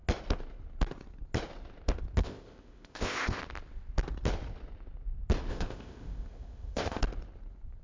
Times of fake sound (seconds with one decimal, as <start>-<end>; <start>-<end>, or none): 2.2-3.4; 5.5-7.0